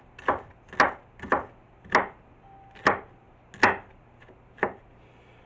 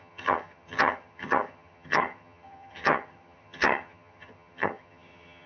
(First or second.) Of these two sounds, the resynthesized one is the second